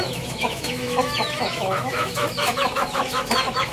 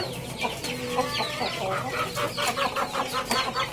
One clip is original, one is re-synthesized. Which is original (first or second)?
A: second